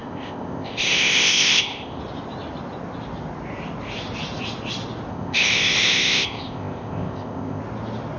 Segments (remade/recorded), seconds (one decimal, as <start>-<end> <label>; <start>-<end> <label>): 0.0-2.0 remade; 2.0-5.1 recorded; 5.1-7.6 remade; 7.6-8.2 recorded